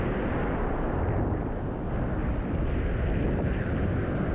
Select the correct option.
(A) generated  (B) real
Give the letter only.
B